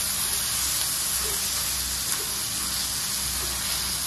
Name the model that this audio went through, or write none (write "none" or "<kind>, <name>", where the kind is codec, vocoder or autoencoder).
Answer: none